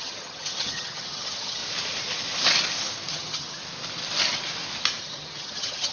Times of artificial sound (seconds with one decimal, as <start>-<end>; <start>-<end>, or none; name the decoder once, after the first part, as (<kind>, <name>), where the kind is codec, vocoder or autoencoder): 0.0-1.6 (vocoder, HiFi-GAN); 3.1-3.6; 5.0-5.9